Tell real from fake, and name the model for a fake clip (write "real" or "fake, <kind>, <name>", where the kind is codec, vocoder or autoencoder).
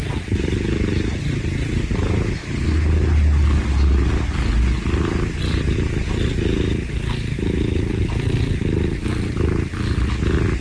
real